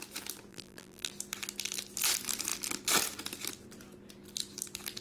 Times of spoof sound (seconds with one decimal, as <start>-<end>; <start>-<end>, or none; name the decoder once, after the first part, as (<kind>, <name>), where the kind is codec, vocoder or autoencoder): 0.5-1.1 (vocoder, BigVGAN v2)